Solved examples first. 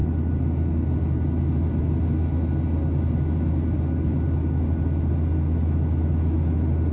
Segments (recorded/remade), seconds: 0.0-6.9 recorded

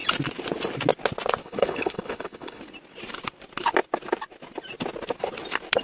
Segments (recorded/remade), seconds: 0.0-1.4 recorded; 1.4-2.6 remade; 2.6-5.8 recorded

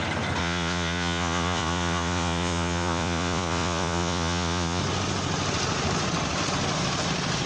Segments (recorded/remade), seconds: 0.0-0.4 recorded; 0.4-4.8 remade; 4.8-7.5 recorded

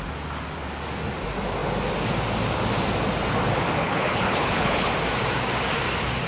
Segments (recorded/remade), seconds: 0.0-3.8 recorded; 3.8-4.9 remade; 4.9-6.3 recorded

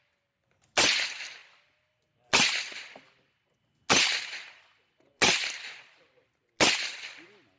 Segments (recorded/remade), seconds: 0.0-7.6 recorded

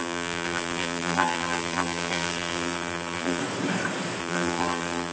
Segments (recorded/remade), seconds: 0.0-3.4 remade; 3.4-4.2 recorded; 4.2-5.1 remade

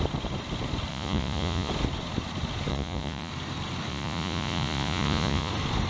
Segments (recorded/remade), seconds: 0.0-0.9 recorded; 0.9-1.7 remade; 1.7-2.7 recorded; 2.7-3.3 remade; 3.3-3.9 recorded; 3.9-5.5 remade; 5.5-5.9 recorded